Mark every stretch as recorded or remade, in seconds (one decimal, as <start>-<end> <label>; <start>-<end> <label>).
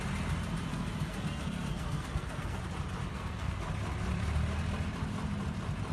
0.0-0.7 recorded; 0.7-2.6 remade; 2.6-3.1 recorded; 3.1-3.6 remade; 3.6-5.9 recorded